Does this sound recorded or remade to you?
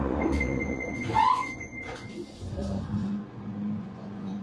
remade